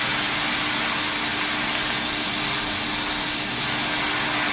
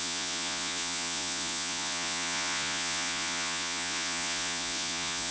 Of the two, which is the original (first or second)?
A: first